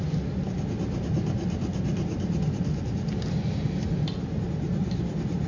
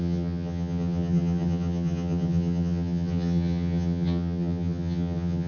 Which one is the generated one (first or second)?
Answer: second